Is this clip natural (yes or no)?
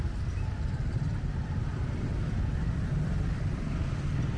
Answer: no